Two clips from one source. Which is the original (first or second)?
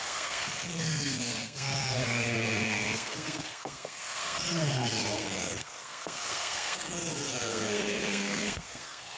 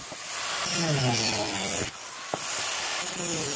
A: second